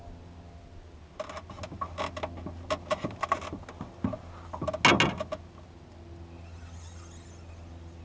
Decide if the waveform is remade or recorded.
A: recorded